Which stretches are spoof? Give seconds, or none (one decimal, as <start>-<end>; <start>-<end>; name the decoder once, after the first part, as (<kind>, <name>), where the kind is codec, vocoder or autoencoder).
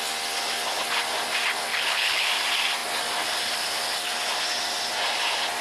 1.7-2.3 (codec, HILCodec)